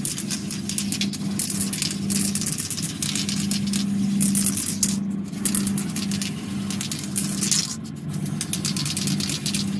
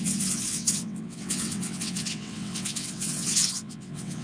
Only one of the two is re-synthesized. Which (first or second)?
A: second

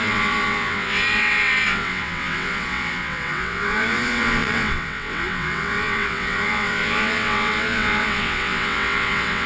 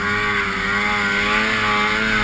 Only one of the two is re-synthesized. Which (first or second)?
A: first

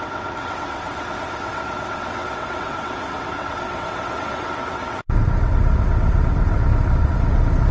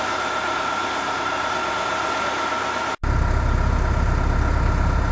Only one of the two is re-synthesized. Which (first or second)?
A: first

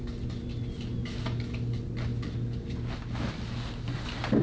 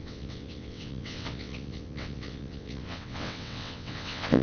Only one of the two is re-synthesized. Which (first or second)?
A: second